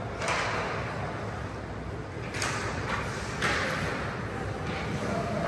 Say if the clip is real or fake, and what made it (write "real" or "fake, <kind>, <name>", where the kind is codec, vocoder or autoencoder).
real